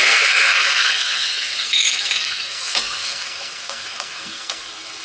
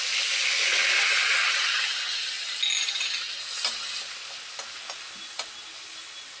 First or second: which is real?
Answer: second